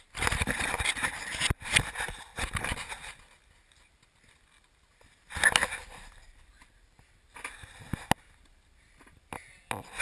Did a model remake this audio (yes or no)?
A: no